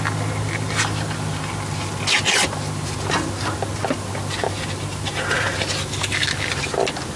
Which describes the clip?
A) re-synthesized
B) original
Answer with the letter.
B